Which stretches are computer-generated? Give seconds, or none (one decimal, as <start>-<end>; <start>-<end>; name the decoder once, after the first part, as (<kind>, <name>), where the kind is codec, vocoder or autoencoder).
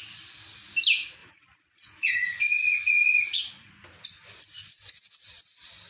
1.2-3.7 (vocoder, Vocos)